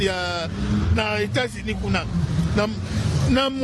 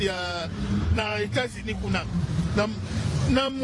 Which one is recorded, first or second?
first